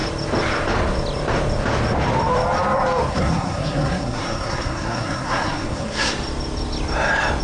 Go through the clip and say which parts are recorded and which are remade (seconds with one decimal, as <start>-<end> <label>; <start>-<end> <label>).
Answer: 0.0-3.1 recorded; 3.1-6.1 remade; 6.1-7.4 recorded